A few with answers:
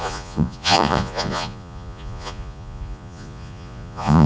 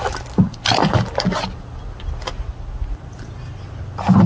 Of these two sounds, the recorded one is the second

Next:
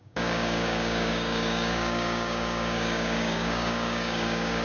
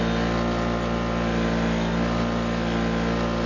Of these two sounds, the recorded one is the second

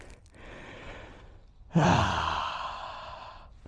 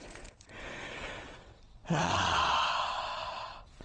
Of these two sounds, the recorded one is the first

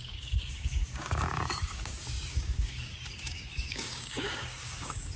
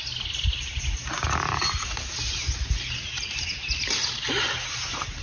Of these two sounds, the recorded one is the second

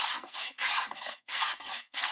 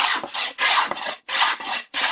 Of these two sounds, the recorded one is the second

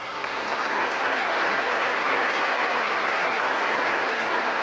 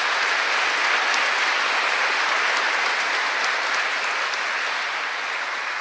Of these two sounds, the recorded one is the second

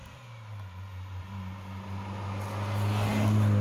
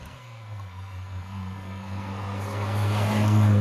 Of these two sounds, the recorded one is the first